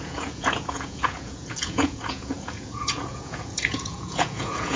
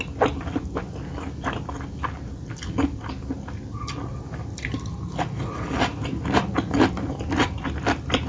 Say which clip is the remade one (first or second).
first